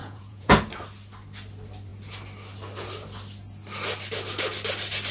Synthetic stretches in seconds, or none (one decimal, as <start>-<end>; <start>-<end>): 0.0-0.6